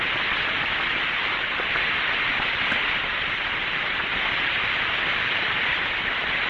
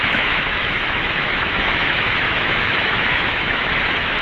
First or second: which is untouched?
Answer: first